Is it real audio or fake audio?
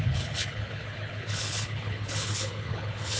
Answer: fake